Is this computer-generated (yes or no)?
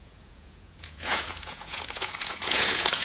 yes